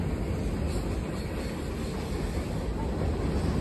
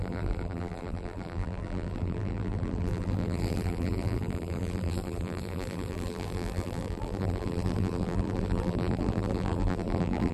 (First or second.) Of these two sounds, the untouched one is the first